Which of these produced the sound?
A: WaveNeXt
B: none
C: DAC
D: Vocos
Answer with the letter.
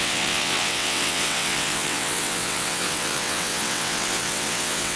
A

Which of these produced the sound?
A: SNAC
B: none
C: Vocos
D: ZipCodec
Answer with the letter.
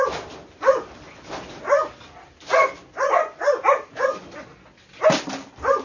B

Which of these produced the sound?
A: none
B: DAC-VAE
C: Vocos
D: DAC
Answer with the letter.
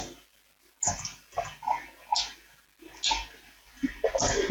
A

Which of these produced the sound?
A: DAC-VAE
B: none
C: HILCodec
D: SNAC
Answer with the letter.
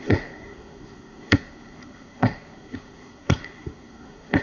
D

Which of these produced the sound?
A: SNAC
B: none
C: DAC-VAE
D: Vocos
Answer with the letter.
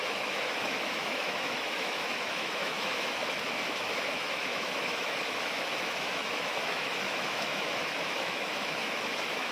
C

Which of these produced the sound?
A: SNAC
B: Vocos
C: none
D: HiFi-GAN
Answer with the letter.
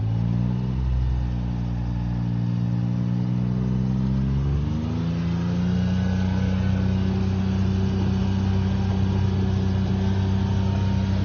C